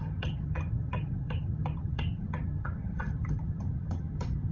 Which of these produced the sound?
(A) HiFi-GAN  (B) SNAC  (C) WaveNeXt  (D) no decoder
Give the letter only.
A